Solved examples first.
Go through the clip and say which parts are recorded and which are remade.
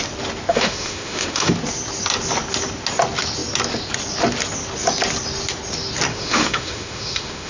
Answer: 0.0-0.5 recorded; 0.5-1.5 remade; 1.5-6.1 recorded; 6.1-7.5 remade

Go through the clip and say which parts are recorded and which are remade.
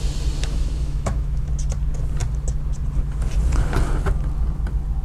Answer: 0.0-0.5 recorded; 0.5-1.5 remade; 1.5-5.0 recorded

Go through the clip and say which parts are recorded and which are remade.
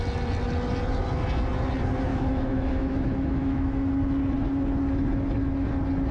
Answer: 0.0-2.1 recorded; 2.1-3.9 remade; 3.9-6.1 recorded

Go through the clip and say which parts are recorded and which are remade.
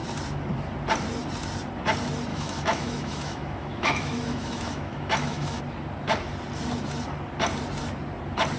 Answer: 0.0-2.3 recorded; 2.3-5.6 remade; 5.6-8.6 recorded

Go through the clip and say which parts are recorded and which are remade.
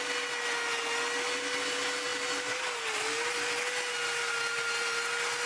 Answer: 0.0-5.5 recorded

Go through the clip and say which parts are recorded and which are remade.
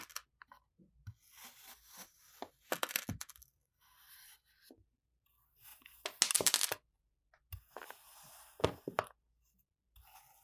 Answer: 0.0-10.4 recorded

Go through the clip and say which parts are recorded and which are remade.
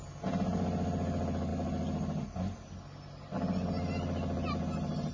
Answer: 0.0-5.1 recorded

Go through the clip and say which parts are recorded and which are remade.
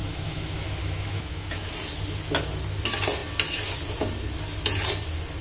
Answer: 0.0-1.7 remade; 1.7-5.4 recorded